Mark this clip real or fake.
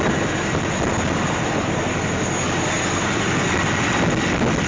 real